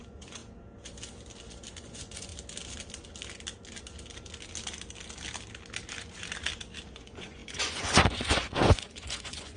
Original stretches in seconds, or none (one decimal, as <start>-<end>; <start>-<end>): 0.4-1.8; 2.3-6.9